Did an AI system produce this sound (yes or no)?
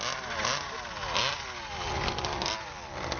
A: no